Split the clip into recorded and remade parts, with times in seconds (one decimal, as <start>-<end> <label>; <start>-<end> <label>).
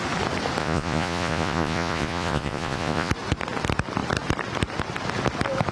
0.0-0.6 recorded; 0.6-3.1 remade; 3.1-5.7 recorded